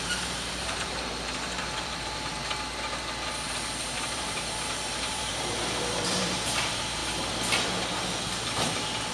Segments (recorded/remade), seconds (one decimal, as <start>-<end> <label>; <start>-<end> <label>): 0.0-2.4 remade; 2.4-3.3 recorded; 3.3-7.0 remade; 7.0-8.5 recorded; 8.5-9.1 remade